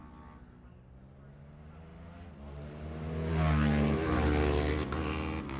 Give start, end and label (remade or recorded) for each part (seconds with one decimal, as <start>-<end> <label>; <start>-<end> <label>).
0.0-5.6 recorded